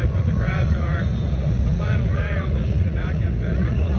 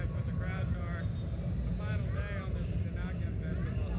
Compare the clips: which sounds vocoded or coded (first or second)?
first